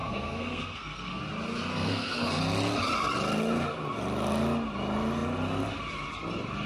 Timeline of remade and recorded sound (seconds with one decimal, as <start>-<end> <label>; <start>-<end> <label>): 0.0-1.2 remade; 1.2-1.7 recorded; 1.7-2.4 remade; 2.4-6.7 recorded